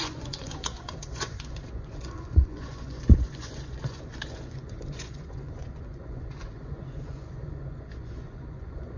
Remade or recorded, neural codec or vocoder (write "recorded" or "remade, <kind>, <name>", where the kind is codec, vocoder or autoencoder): remade, vocoder, Vocos